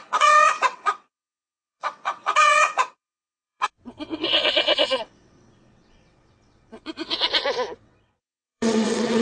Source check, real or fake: fake